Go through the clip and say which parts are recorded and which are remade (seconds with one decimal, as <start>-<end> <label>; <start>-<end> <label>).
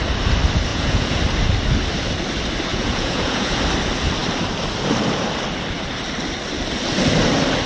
0.0-0.7 recorded; 0.7-1.2 remade; 1.2-2.7 recorded; 2.7-3.6 remade; 3.6-7.7 recorded